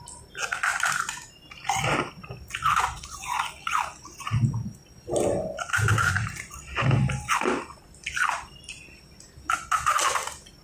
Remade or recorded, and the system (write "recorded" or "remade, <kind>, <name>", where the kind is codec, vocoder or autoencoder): recorded